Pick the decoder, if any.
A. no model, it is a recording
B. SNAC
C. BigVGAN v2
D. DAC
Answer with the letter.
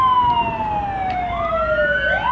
A